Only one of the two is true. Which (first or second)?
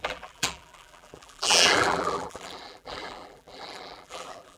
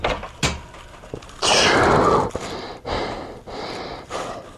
second